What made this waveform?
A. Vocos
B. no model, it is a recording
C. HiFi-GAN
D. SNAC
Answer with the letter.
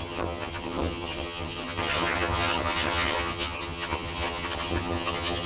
C